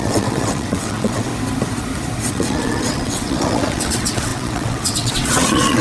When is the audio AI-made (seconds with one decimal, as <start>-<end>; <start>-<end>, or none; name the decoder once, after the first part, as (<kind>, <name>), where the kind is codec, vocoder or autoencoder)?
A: 0.0-1.3 (vocoder, WaveNeXt); 2.3-5.8